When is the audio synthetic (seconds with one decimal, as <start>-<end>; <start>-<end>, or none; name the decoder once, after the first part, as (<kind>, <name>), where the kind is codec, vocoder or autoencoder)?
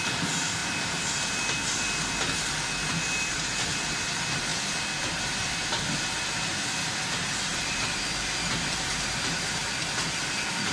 7.5-9.6 (vocoder, BigVGAN v2)